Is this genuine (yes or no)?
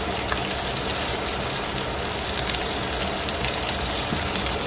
yes